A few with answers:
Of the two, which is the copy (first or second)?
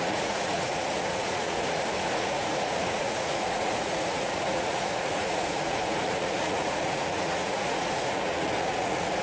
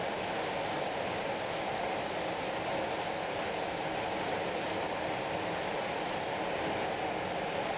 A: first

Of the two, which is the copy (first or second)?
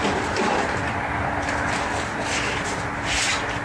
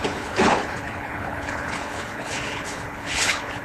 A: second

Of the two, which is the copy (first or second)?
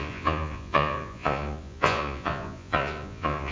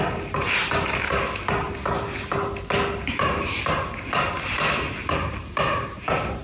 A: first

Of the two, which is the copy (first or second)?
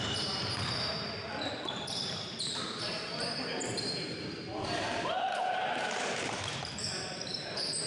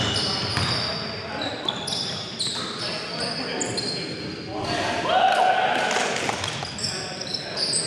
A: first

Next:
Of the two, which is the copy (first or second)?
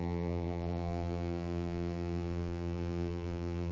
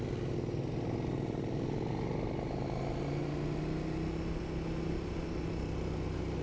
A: first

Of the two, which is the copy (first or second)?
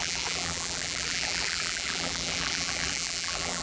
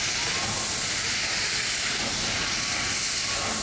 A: first